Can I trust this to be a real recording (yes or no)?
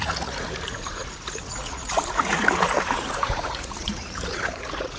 no